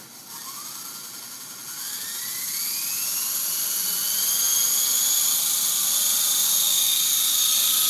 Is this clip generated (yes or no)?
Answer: no